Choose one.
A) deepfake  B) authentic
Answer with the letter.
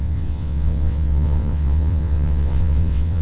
A